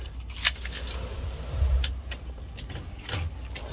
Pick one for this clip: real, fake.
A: real